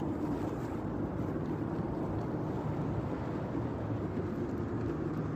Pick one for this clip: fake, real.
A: real